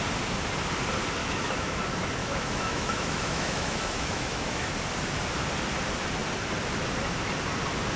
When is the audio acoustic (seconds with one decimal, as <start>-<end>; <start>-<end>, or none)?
0.0-1.2; 1.8-2.2; 4.7-8.0